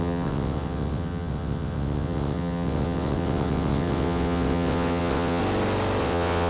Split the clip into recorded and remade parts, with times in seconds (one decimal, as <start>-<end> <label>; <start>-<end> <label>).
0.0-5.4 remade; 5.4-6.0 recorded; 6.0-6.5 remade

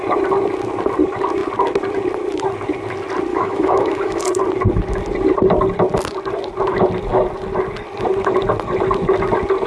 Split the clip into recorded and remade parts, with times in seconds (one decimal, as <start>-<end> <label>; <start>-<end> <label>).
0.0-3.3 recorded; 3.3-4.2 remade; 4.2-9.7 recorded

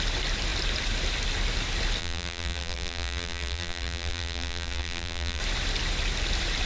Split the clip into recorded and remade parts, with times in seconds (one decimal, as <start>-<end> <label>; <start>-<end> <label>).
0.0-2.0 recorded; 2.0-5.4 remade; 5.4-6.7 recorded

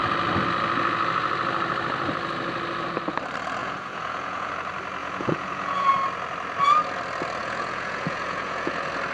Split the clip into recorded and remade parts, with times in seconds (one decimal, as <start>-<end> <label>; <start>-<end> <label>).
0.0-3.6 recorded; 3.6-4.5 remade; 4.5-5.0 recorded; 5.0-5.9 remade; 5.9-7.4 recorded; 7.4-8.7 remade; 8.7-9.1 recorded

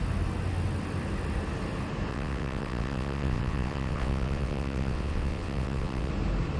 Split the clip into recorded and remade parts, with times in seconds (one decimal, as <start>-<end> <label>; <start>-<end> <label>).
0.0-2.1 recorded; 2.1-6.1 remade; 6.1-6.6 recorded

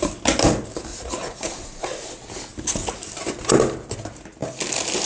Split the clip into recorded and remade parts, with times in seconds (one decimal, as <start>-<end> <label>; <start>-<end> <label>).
0.0-0.9 recorded; 0.9-1.8 remade; 1.8-5.1 recorded